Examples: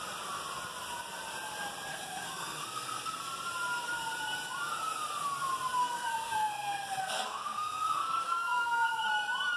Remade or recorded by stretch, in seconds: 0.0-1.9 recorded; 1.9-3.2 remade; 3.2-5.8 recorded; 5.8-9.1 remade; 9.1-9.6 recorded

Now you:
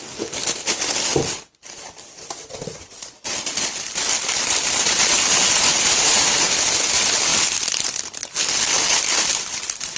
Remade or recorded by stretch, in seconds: 0.0-10.0 recorded

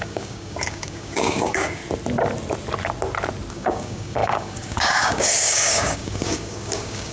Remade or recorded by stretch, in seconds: 0.0-1.8 remade; 1.8-3.5 recorded; 3.5-7.1 remade